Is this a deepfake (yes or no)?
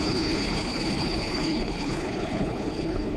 yes